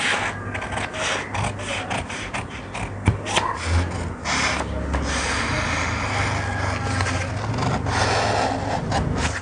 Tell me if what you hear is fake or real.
real